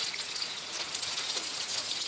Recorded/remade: remade